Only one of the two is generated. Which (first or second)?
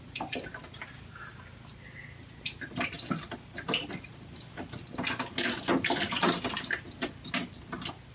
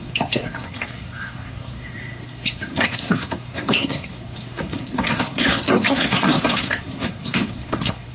second